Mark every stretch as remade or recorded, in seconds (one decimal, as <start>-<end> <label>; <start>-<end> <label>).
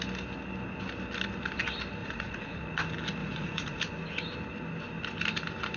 0.0-2.0 recorded; 2.0-2.6 remade; 2.6-3.2 recorded; 3.2-3.8 remade; 3.8-5.8 recorded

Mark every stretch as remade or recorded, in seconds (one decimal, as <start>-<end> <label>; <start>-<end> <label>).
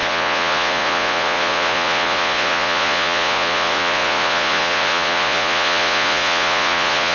0.0-7.1 remade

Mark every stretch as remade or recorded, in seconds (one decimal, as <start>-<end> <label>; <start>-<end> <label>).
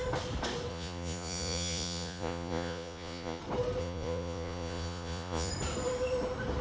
0.0-0.7 recorded; 0.7-3.4 remade; 3.4-3.8 recorded; 3.8-5.5 remade; 5.5-6.6 recorded